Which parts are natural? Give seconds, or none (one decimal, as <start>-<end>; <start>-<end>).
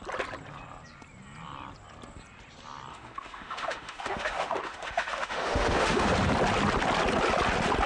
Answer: 0.0-2.9; 6.1-7.9